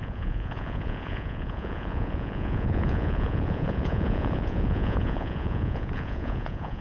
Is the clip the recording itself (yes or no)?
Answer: no